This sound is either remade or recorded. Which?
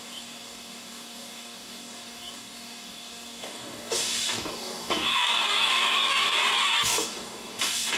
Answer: remade